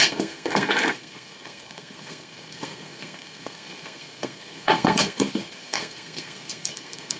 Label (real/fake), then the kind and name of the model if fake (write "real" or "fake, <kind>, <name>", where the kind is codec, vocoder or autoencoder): fake, codec, SNAC